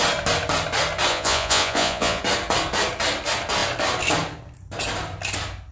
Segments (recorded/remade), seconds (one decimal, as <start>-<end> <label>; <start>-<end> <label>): 0.0-1.1 recorded; 1.1-2.2 remade; 2.2-5.7 recorded